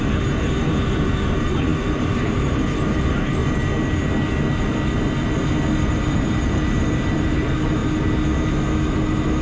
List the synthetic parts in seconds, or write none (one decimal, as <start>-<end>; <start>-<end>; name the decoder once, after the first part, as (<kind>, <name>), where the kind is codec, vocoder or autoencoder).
0.0-3.4 (vocoder, BigVGAN v2); 5.8-7.8